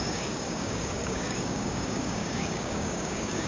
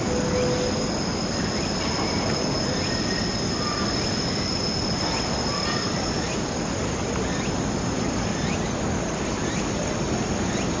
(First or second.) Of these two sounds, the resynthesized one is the first